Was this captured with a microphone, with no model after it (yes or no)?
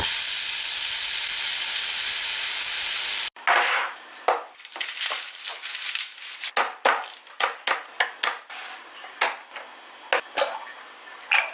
yes